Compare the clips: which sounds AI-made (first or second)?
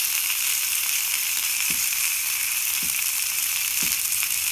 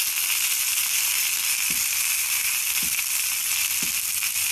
first